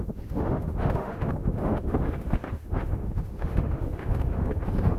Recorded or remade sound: remade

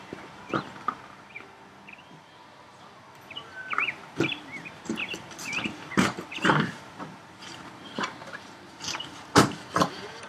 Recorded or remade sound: remade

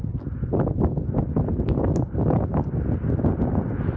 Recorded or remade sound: recorded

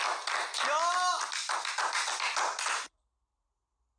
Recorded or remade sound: recorded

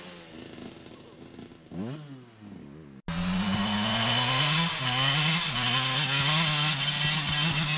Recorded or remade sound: recorded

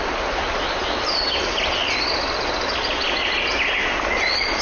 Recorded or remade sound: recorded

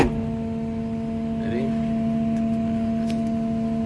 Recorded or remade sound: recorded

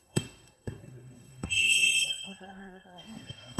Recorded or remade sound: remade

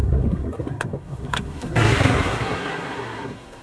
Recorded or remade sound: remade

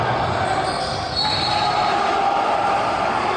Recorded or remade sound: recorded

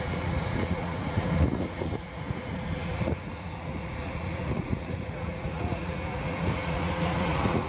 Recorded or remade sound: remade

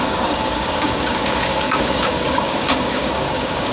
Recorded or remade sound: remade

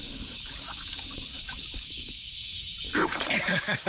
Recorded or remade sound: remade